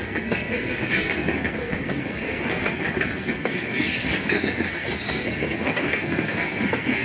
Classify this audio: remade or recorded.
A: remade